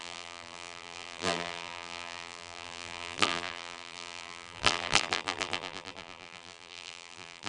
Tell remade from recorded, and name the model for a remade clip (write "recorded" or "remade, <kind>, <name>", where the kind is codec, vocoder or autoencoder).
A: remade, vocoder, BigVGAN v2